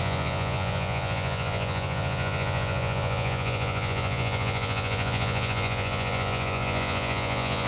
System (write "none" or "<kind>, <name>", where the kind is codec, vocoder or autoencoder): vocoder, Vocos